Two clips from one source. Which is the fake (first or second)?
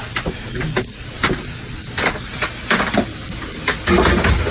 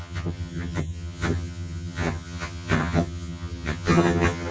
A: second